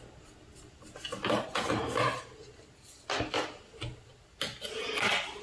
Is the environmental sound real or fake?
real